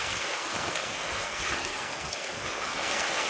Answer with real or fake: fake